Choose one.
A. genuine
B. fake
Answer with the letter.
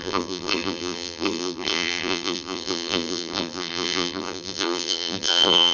B